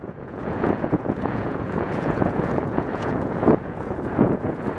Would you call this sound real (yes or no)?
no